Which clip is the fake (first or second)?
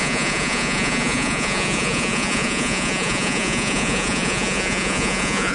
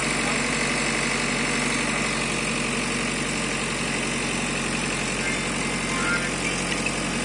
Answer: first